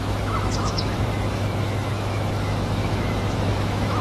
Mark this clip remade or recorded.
remade